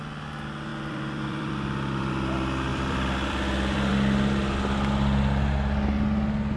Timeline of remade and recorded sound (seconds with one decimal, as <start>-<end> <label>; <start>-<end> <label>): 0.0-0.7 recorded; 0.7-2.1 remade; 2.1-2.7 recorded; 2.7-3.9 remade; 3.9-6.6 recorded